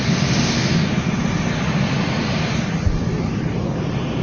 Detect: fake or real real